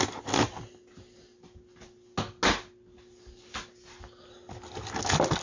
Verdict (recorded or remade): recorded